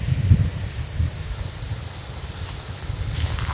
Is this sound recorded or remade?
recorded